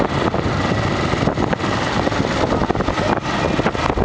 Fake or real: real